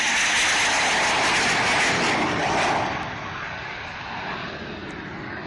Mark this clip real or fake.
real